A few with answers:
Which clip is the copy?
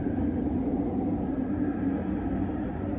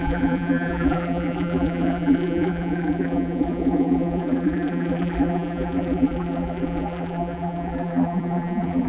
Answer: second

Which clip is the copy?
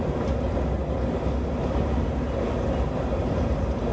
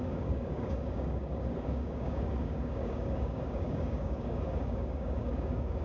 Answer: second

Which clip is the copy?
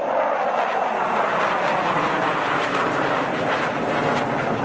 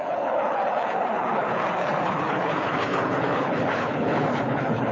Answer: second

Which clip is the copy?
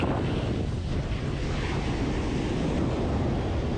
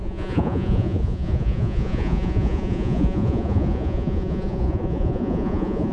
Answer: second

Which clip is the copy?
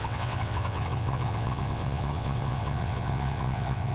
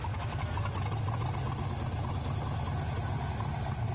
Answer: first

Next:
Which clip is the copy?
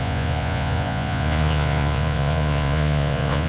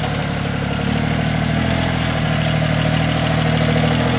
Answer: first